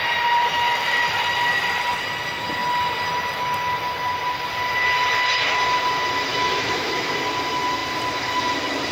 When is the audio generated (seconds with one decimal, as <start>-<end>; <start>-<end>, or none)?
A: 6.3-7.1